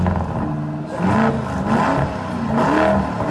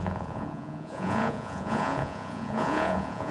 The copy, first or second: second